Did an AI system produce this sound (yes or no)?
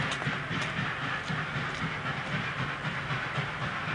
no